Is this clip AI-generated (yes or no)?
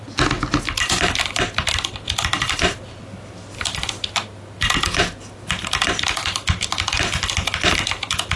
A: no